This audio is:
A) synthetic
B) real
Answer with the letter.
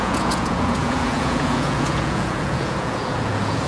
A